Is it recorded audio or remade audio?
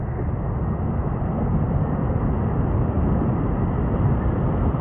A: recorded